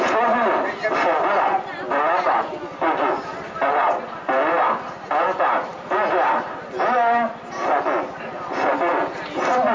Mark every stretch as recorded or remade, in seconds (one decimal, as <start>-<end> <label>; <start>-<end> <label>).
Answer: 0.0-9.7 recorded